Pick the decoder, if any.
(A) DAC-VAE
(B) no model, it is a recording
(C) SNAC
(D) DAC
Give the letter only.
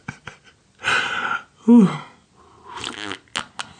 B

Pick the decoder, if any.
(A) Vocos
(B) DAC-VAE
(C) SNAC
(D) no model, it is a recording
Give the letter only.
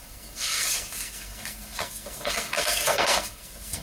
C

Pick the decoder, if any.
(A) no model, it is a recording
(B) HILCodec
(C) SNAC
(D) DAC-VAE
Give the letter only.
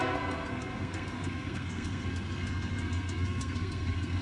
C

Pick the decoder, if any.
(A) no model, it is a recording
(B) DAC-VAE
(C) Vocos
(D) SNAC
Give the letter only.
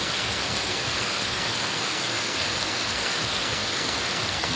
D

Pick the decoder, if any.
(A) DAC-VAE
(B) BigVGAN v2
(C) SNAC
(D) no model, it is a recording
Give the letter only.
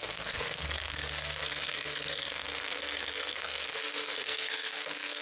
C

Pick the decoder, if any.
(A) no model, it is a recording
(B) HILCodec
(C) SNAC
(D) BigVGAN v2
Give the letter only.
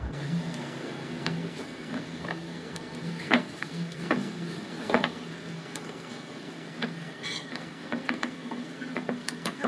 C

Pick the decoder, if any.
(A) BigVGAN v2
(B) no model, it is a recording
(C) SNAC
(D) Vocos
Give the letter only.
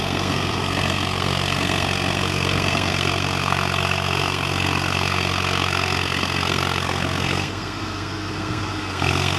C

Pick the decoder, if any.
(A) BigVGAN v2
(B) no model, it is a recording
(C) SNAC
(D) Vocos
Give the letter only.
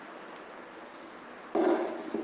B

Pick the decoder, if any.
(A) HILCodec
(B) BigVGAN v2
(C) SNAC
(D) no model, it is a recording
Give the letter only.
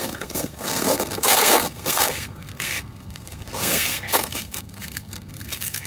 C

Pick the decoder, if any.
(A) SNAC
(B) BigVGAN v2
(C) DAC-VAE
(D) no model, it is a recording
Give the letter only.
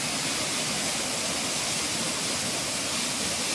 D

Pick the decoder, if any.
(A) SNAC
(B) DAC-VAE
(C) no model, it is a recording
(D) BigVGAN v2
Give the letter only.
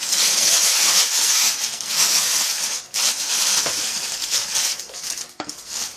A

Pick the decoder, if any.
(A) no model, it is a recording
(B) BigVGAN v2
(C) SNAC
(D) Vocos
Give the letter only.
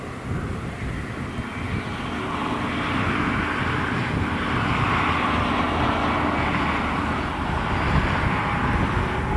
A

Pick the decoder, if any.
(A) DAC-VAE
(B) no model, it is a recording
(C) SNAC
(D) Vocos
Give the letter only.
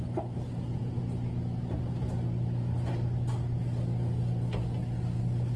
B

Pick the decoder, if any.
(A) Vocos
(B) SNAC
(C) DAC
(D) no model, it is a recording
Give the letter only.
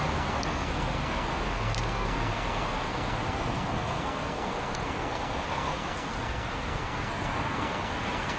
B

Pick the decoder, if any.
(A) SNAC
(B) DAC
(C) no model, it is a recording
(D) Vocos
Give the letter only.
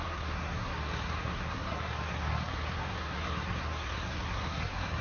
A